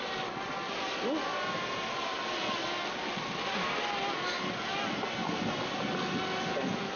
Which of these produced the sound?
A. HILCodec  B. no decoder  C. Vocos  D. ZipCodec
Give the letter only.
B